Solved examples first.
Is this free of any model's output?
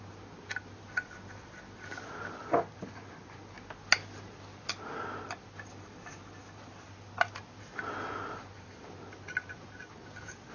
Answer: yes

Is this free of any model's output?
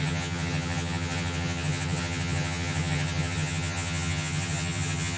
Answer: no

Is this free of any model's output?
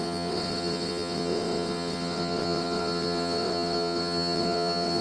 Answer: no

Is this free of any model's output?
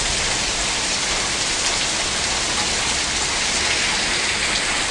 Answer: yes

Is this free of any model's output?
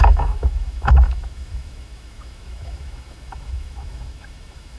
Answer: no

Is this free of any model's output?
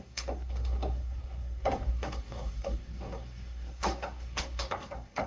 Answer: no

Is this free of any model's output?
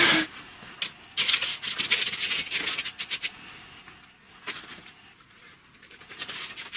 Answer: yes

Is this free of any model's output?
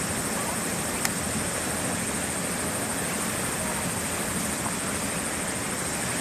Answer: yes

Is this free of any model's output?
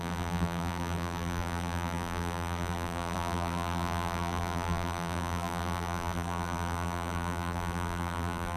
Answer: no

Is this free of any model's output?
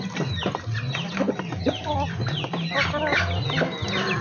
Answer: yes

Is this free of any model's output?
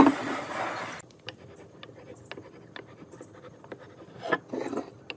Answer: yes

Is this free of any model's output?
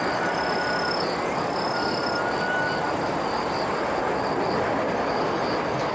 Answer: yes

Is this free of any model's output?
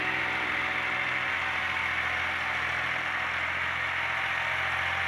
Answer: yes